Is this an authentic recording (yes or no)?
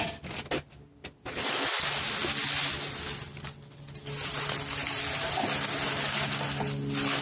yes